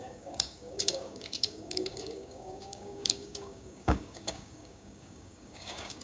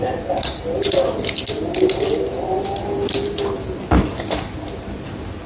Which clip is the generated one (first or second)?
first